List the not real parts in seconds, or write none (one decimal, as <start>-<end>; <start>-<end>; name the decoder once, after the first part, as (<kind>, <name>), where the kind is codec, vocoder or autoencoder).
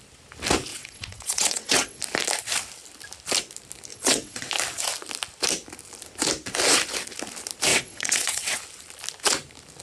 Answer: 0.7-2.0 (vocoder, WaveNeXt); 3.9-4.5; 7.7-8.6